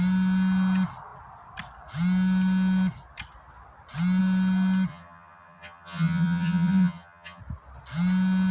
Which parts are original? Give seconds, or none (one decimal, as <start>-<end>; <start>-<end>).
0.0-4.9; 7.4-8.5